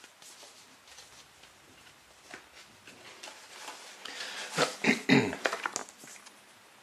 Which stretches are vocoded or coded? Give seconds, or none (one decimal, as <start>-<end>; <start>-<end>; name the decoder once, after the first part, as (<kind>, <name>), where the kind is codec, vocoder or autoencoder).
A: none